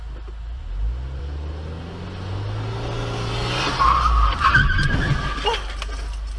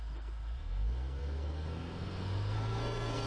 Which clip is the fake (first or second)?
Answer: second